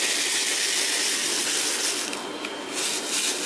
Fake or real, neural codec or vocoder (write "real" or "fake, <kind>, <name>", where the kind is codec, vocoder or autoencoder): real